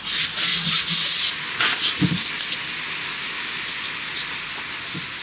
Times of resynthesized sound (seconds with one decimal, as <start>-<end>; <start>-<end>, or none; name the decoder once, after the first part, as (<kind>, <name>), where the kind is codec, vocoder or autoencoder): none